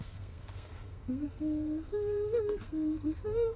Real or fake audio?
fake